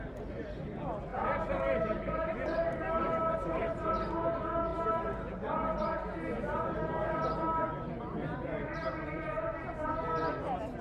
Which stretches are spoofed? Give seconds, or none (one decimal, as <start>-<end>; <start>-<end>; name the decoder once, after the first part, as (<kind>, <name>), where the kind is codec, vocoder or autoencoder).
1.1-3.9 (vocoder, BigVGAN v2)